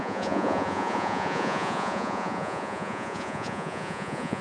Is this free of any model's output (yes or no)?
no